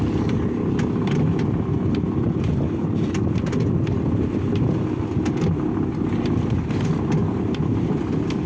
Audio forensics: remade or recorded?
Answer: recorded